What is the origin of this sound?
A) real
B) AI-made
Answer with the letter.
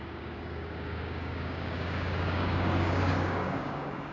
B